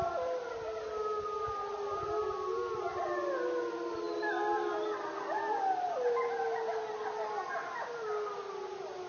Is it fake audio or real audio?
real